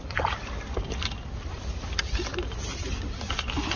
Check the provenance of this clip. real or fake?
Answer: real